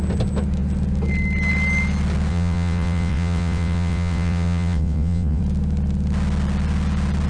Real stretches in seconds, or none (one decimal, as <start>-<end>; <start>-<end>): 0.0-2.3; 5.4-7.3